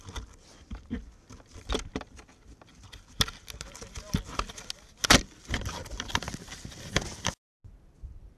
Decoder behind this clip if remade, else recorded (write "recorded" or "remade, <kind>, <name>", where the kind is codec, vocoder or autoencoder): recorded